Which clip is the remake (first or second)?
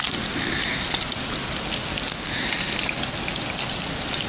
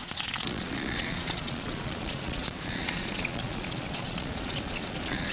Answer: second